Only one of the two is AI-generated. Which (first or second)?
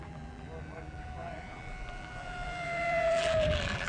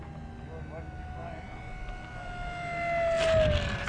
first